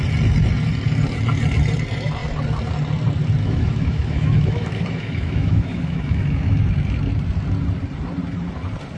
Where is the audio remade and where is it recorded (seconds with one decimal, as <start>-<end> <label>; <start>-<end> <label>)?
0.0-3.4 recorded; 3.4-6.6 remade; 6.6-9.0 recorded